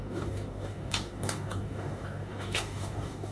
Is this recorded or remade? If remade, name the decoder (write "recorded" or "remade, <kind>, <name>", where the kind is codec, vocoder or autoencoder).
remade, codec, DAC